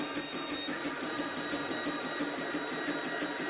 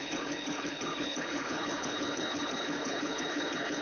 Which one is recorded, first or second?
first